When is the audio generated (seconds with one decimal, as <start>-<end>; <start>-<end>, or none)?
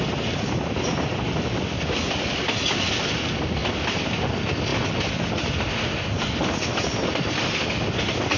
none